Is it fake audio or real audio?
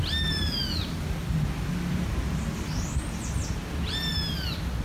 real